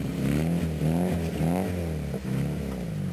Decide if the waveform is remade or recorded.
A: recorded